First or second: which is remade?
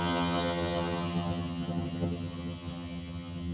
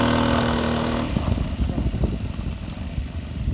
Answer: first